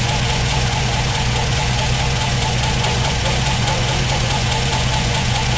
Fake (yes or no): yes